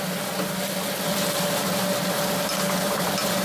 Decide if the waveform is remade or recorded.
recorded